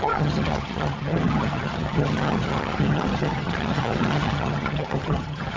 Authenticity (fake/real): fake